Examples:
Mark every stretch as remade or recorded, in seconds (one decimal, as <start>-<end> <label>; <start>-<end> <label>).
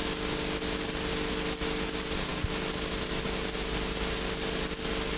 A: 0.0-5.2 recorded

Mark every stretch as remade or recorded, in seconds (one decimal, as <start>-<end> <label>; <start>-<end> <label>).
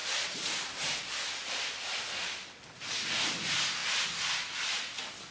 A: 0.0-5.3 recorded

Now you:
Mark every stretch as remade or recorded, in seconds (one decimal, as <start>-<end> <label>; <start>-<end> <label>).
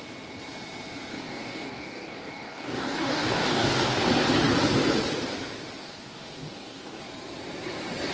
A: 0.0-1.1 recorded; 1.1-4.1 remade; 4.1-5.8 recorded; 5.8-7.0 remade; 7.0-8.1 recorded